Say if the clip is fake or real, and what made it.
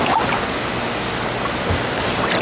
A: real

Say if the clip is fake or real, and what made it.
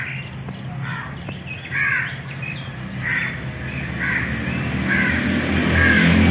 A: real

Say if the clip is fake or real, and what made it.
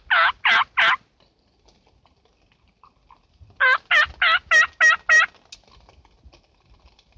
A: real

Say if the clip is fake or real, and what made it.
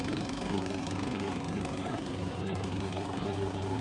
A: fake, codec, SNAC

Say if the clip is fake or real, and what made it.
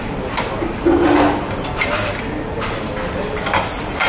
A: real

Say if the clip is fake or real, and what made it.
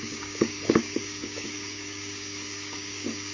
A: fake, codec, DAC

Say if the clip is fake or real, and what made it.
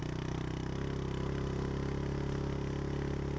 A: real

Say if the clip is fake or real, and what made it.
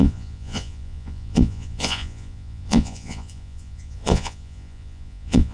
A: fake, vocoder, Vocos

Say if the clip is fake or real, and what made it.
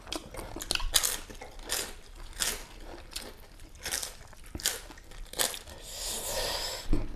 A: real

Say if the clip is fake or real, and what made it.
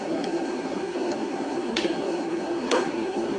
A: fake, codec, SNAC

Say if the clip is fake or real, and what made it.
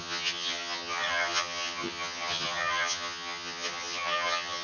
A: fake, vocoder, HiFi-GAN